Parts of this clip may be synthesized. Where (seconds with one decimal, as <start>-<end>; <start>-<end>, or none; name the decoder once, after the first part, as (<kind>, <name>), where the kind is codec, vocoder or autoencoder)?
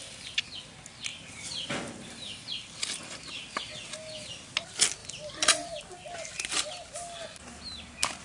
1.1-3.0 (vocoder, BigVGAN v2); 5.0-5.8